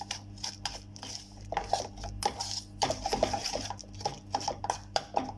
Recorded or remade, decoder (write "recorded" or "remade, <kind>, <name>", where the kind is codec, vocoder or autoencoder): remade, vocoder, BigVGAN v2